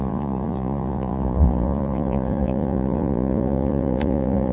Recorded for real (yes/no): no